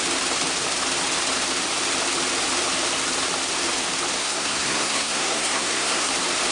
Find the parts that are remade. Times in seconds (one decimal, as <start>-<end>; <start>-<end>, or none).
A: 4.2-6.1